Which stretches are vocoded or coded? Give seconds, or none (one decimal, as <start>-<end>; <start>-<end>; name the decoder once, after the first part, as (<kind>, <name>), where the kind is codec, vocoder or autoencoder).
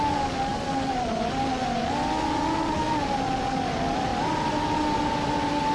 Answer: none